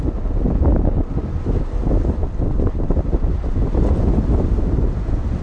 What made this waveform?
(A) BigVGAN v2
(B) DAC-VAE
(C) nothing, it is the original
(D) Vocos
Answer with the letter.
C